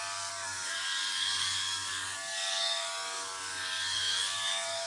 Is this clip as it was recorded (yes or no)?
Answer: no